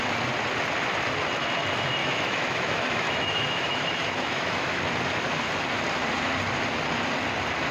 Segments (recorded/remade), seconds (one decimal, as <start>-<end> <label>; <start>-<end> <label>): 0.0-2.0 recorded; 2.0-4.8 remade; 4.8-7.7 recorded